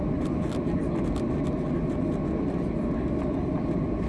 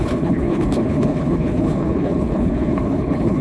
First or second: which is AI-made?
second